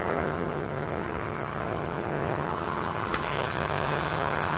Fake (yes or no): yes